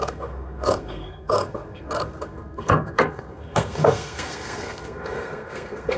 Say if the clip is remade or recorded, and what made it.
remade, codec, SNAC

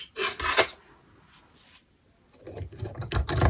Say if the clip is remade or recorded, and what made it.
recorded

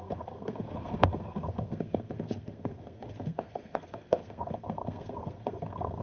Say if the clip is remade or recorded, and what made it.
remade, codec, SNAC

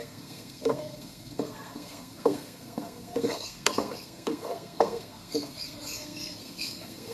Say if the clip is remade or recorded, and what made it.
remade, codec, SNAC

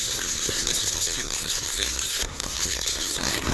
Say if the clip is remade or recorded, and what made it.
remade, codec, SNAC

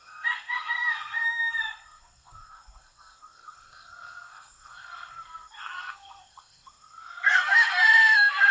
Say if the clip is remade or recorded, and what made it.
remade, codec, SNAC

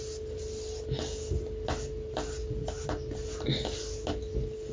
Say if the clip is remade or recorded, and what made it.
recorded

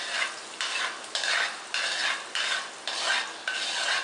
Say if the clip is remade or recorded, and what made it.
recorded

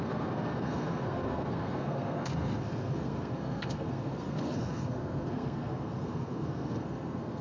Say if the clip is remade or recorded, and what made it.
remade, codec, SNAC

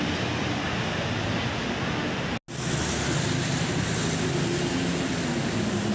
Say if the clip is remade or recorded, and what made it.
recorded